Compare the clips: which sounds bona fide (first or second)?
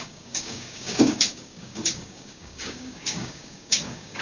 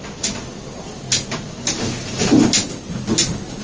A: second